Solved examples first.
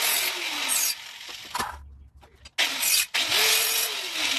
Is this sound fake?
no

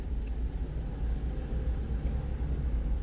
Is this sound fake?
no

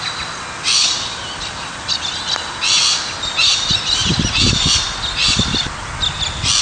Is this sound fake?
no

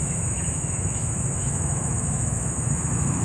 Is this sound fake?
yes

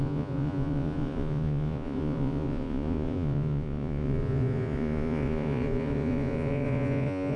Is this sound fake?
yes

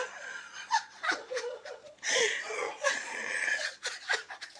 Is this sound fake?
yes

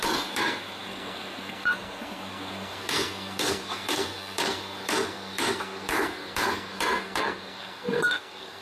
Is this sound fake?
yes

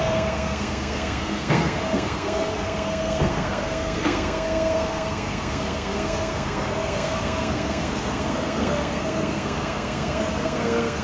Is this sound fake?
yes